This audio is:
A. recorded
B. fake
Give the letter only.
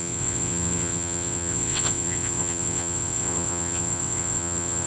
B